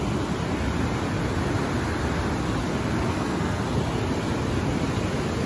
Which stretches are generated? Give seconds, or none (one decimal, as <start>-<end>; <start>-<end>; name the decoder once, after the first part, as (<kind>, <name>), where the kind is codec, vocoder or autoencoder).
3.1-3.6 (codec, SNAC)